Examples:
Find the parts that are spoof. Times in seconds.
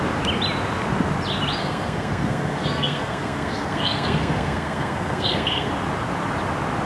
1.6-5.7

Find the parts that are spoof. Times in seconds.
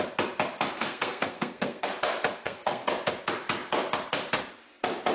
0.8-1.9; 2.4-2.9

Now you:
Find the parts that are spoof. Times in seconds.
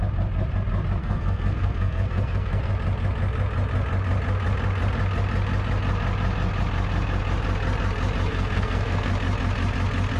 1.0-2.7; 8.3-9.1